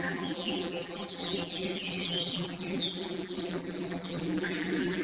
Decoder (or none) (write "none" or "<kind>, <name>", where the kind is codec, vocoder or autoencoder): vocoder, BigVGAN v2